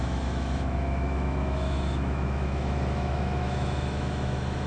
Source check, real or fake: fake